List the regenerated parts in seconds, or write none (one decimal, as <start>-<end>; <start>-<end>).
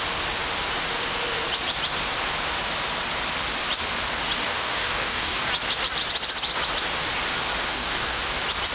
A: 4.4-5.5; 7.7-8.2